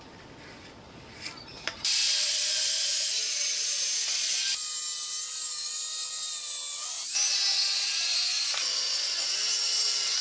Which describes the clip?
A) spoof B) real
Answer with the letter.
B